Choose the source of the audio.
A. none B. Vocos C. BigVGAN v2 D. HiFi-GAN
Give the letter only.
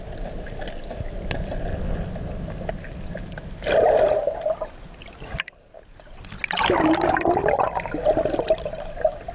A